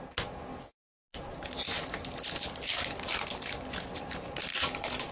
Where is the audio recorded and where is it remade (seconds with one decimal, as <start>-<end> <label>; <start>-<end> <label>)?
0.0-4.5 recorded; 4.5-5.1 remade